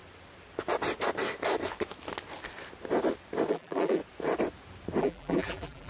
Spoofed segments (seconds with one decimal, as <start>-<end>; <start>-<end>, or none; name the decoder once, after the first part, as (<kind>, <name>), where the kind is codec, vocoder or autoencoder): 3.5-4.0 (vocoder, BigVGAN v2); 5.0-5.9